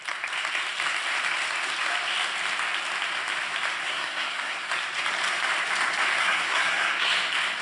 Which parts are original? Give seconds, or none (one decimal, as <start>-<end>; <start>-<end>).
0.0-3.8; 4.7-6.2; 7.1-7.6